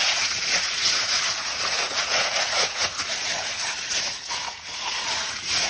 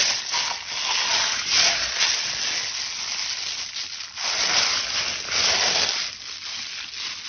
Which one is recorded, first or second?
second